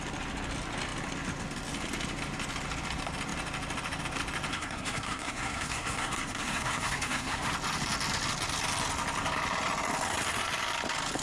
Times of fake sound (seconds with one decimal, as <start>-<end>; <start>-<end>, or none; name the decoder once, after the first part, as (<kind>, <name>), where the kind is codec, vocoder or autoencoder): 4.5-7.5 (codec, SNAC)